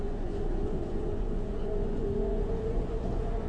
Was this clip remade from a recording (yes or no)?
yes